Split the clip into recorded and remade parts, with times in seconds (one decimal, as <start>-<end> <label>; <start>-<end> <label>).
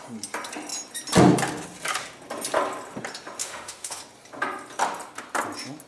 0.0-3.4 recorded; 3.4-4.0 remade; 4.0-5.9 recorded